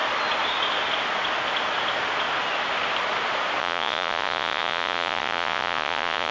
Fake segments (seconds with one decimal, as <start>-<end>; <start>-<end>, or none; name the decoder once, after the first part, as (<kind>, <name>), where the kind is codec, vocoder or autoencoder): 3.6-6.3 (vocoder, Vocos)